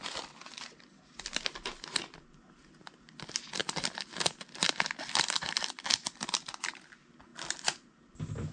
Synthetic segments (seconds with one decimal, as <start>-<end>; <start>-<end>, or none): none